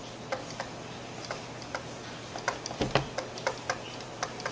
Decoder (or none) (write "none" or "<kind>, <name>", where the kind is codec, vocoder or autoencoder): none